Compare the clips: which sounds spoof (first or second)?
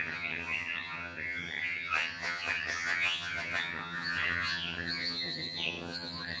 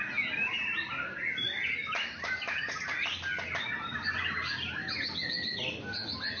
first